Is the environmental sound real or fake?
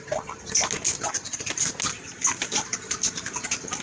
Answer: real